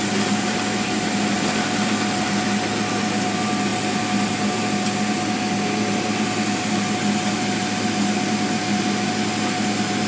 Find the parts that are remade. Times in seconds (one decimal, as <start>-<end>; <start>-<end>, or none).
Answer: none